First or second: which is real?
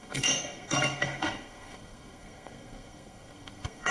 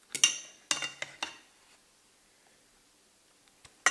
second